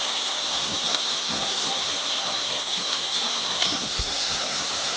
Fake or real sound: fake